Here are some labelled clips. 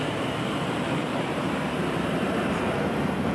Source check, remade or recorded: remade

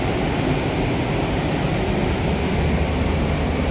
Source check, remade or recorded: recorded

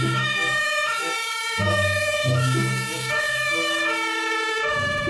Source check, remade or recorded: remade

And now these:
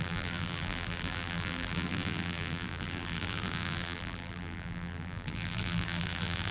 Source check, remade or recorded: remade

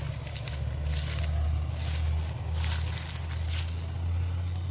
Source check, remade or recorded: recorded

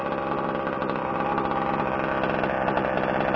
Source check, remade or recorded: recorded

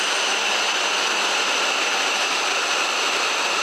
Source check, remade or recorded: recorded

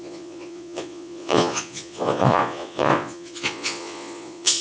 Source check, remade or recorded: remade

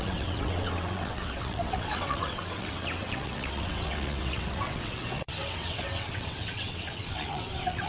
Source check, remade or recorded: remade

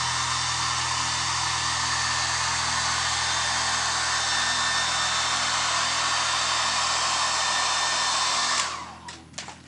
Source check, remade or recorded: recorded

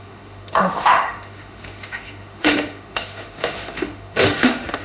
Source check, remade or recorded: remade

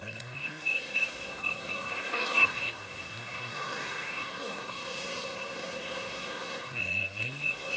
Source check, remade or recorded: remade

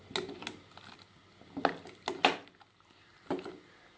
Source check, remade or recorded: recorded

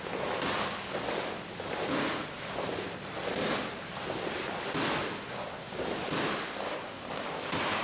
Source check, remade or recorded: recorded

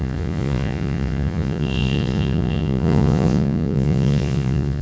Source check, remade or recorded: remade